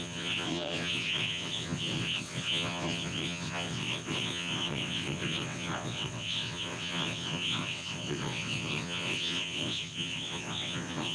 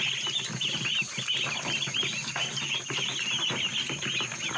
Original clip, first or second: second